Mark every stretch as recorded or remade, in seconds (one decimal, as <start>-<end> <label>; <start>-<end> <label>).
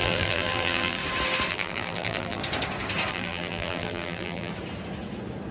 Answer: 0.0-1.0 remade; 1.0-1.5 recorded; 1.5-2.4 remade; 2.4-3.1 recorded; 3.1-4.5 remade; 4.5-5.5 recorded